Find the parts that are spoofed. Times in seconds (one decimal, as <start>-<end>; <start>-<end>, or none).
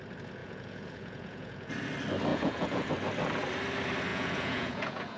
0.4-1.7; 2.3-2.9; 4.1-5.2